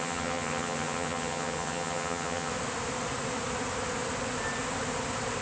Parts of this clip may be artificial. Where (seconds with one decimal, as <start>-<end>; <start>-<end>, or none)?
0.0-2.5